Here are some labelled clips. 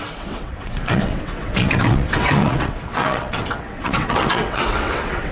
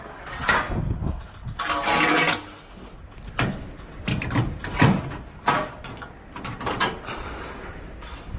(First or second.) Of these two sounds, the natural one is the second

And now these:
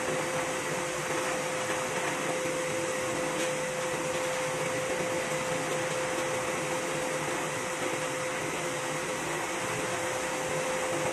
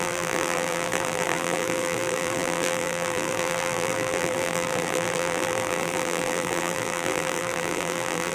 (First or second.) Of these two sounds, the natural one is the first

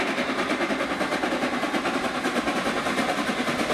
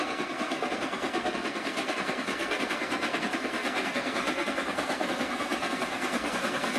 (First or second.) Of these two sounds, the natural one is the first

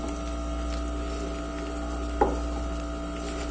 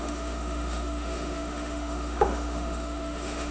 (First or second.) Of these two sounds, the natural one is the first